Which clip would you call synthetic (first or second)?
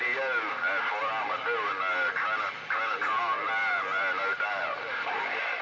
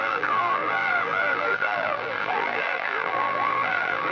second